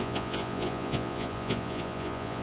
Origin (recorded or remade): remade